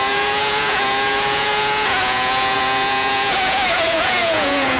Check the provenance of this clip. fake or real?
fake